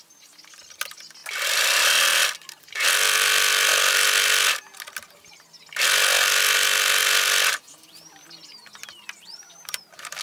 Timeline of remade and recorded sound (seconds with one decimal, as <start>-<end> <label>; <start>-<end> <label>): 0.0-10.2 recorded